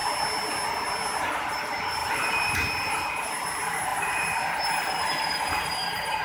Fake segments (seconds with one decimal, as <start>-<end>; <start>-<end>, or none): 1.2-6.2